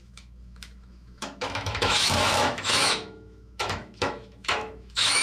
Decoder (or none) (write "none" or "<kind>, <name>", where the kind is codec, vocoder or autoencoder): autoencoder, DAC-VAE